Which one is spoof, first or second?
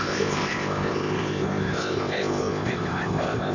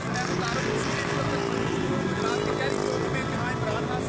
first